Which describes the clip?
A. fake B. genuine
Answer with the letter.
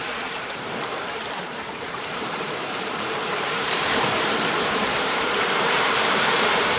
A